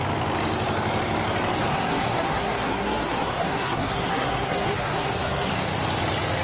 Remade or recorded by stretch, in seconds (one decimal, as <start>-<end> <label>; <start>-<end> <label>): 0.0-1.7 recorded; 1.7-5.5 remade; 5.5-6.4 recorded